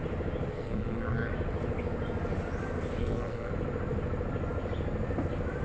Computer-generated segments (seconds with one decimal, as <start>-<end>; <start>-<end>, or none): 0.5-1.3; 3.0-3.5

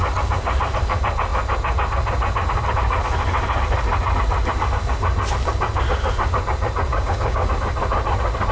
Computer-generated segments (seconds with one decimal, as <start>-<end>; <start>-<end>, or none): 6.9-7.5